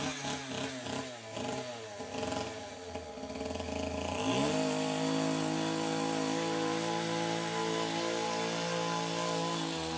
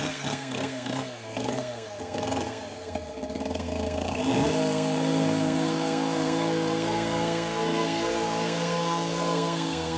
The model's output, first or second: second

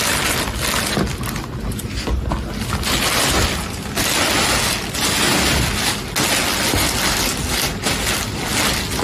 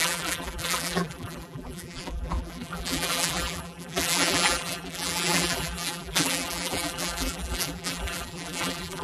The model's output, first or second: second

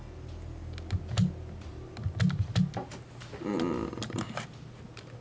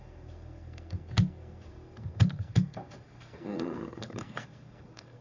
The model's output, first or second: second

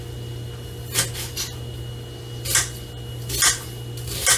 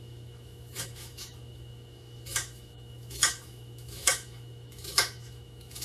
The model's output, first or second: second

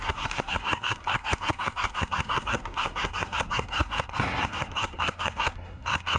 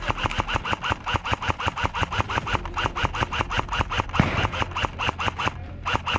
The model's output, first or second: first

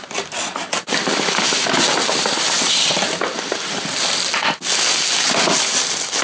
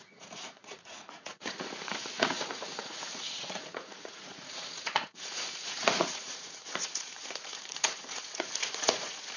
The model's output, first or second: second